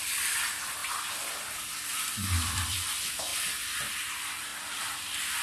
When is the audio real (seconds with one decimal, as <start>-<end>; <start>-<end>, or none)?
none